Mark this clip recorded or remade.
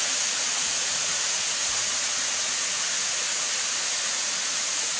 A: remade